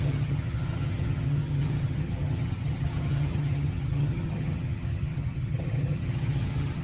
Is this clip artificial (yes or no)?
yes